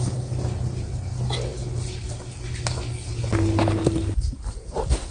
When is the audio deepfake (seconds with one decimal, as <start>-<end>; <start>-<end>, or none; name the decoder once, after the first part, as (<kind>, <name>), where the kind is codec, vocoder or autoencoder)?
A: none